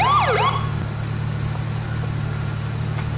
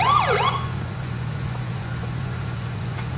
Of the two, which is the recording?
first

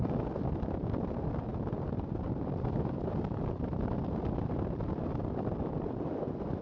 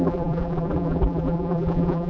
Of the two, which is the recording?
first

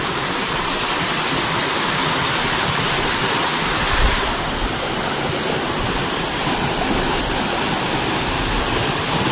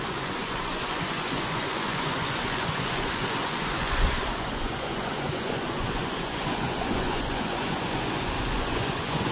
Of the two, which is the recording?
first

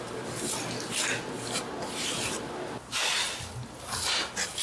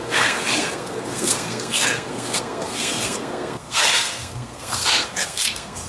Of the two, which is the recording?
first